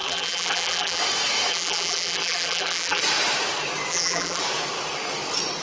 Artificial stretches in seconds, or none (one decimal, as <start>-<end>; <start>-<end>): 0.0-1.0; 1.5-3.0; 3.9-4.4